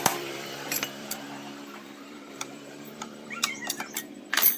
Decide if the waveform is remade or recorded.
remade